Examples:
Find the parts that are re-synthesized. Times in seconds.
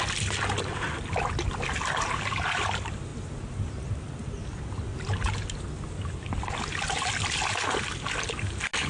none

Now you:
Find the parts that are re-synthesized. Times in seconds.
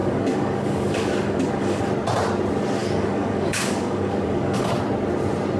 0.0-1.8 (codec, DAC); 2.8-4.7